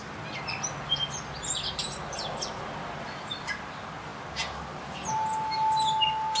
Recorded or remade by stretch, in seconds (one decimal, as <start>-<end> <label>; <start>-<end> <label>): 0.0-6.4 recorded